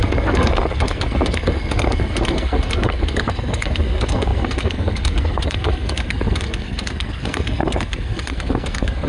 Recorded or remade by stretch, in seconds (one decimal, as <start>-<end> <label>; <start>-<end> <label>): 0.0-9.1 remade